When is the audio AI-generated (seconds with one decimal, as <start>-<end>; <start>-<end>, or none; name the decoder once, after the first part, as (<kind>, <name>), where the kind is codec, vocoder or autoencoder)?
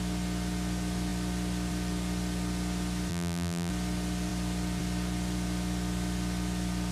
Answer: 3.1-3.7 (vocoder, BigVGAN v2)